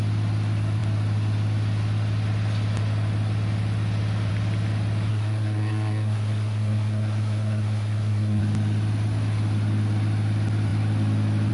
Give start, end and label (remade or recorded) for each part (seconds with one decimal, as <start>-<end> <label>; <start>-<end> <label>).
0.0-5.1 recorded; 5.1-8.4 remade; 8.4-11.5 recorded